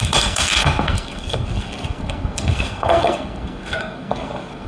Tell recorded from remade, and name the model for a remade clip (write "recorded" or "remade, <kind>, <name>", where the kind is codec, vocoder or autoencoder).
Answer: remade, codec, SNAC